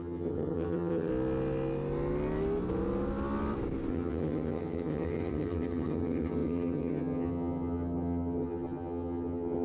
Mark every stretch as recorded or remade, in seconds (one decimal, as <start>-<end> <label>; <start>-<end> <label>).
0.0-1.1 remade; 1.1-3.9 recorded; 3.9-9.6 remade